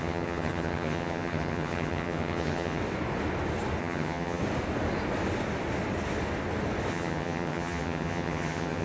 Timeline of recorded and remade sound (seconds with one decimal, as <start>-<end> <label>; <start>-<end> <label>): 0.0-2.8 remade; 2.8-3.8 recorded; 3.8-4.4 remade; 4.4-6.9 recorded; 6.9-8.8 remade